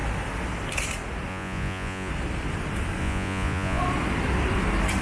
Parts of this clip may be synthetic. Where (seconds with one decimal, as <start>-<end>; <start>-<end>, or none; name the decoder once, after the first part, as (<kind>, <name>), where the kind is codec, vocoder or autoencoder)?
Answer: 1.3-2.1 (vocoder, Vocos); 3.0-3.8